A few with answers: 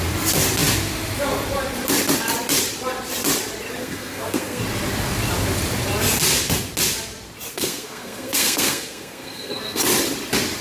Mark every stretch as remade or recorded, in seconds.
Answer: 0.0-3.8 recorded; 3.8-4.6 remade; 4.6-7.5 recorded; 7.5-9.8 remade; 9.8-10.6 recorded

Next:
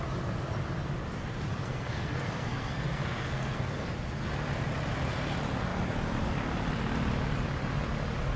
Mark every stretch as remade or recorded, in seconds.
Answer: 0.0-1.6 recorded; 1.6-3.9 remade; 3.9-8.4 recorded

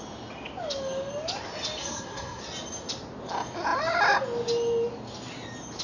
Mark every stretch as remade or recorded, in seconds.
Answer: 0.0-1.8 recorded; 1.8-2.4 remade; 2.4-5.8 recorded